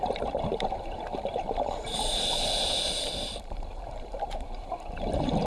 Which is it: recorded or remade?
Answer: remade